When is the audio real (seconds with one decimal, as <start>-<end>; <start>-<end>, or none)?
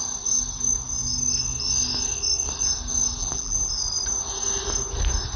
0.0-3.2; 3.7-5.4